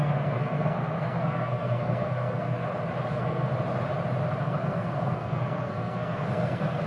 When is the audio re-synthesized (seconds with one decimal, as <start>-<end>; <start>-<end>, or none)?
0.0-2.6; 3.1-3.5; 4.4-6.9